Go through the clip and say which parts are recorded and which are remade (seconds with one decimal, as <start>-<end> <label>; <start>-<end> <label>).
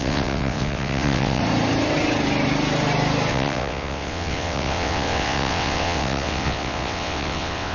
0.0-1.4 remade; 1.4-3.3 recorded; 3.3-7.7 remade